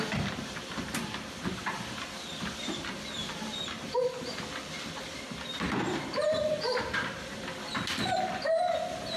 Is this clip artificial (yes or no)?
yes